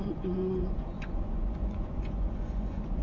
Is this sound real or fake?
fake